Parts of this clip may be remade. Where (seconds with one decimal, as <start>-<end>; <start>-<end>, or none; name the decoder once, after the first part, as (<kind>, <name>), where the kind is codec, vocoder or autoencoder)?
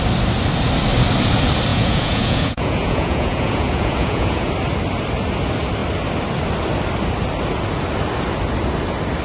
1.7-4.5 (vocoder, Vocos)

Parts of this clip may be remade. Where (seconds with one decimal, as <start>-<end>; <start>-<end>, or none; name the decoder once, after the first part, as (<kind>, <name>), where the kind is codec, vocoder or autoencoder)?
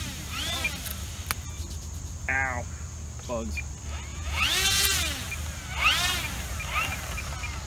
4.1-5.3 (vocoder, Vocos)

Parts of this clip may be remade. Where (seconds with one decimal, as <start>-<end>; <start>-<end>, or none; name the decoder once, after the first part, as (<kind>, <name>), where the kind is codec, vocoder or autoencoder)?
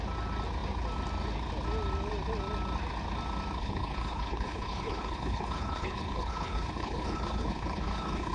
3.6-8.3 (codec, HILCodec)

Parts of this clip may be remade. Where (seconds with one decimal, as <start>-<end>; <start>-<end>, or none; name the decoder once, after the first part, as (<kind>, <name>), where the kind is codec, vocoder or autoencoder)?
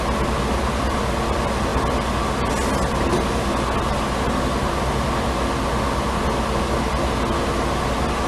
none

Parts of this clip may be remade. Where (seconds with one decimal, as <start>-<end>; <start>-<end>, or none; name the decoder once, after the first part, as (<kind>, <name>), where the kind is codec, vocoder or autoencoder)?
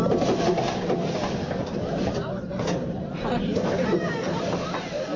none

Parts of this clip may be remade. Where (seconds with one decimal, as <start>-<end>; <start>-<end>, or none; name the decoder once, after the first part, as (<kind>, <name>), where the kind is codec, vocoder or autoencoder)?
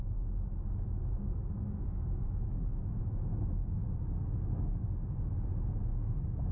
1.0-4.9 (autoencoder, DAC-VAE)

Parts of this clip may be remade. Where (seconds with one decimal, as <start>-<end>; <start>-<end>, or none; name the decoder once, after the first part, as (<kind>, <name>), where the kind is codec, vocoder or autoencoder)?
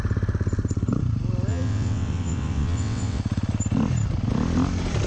1.5-3.2 (vocoder, WaveNeXt)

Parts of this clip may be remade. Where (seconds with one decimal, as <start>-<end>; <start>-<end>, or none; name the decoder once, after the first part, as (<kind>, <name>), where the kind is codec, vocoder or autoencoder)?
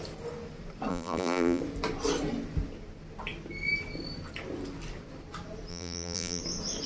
0.9-1.6 (vocoder, BigVGAN v2); 5.7-6.4